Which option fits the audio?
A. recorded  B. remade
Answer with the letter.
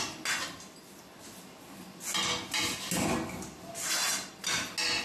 A